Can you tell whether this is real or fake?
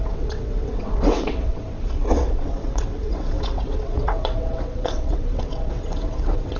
fake